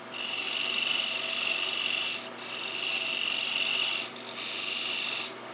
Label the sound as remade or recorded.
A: recorded